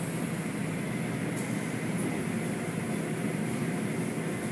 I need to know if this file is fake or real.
real